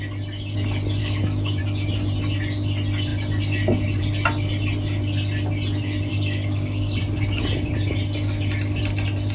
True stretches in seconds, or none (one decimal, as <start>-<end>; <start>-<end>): 0.0-1.0; 1.6-6.1; 7.0-9.3